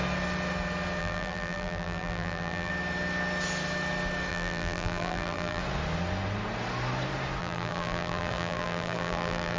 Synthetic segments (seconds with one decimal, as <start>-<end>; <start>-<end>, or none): 1.0-2.7; 4.3-5.6; 7.4-9.6